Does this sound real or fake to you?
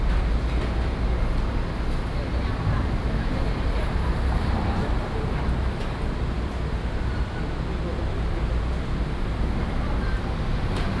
real